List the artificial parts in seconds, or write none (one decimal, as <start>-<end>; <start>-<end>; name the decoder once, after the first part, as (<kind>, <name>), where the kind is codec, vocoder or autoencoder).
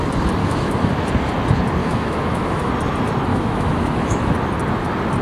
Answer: 0.4-0.9 (autoencoder, DAC-VAE); 1.8-2.7; 3.3-4.3